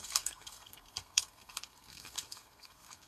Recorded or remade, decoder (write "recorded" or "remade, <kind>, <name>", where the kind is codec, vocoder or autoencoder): remade, codec, SNAC